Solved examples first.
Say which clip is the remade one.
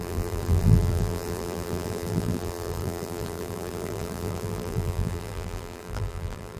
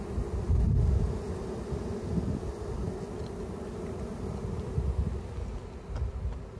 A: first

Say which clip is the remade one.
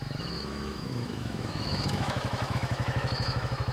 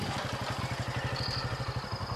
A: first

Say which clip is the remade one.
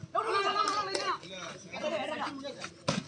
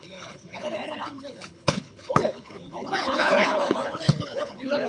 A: second